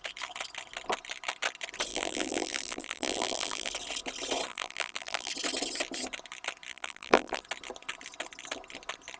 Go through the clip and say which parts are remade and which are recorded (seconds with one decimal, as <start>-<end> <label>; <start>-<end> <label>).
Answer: 0.0-1.9 recorded; 1.9-3.7 remade; 3.7-4.5 recorded; 4.5-5.3 remade; 5.3-6.7 recorded; 6.7-7.4 remade; 7.4-9.2 recorded